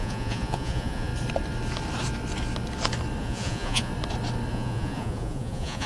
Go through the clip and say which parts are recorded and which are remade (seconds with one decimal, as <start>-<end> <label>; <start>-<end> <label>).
0.0-1.1 remade; 1.1-3.2 recorded; 3.2-3.9 remade; 3.9-4.5 recorded; 4.5-5.9 remade